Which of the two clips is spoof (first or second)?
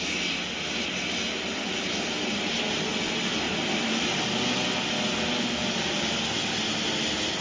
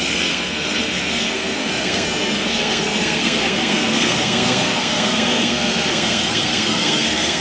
second